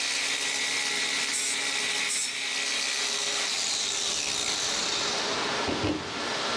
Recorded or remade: recorded